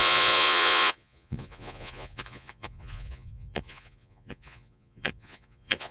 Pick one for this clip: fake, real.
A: fake